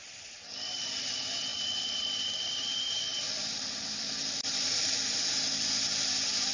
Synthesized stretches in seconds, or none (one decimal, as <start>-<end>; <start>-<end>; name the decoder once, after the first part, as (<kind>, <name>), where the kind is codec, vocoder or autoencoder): 0.0-0.8 (vocoder, BigVGAN v2); 1.5-5.3